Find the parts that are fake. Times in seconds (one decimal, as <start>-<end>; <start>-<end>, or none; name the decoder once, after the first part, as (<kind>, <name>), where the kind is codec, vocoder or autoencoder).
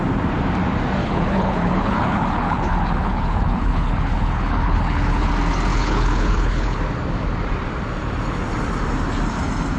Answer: 1.0-5.3 (codec, HILCodec); 5.7-6.8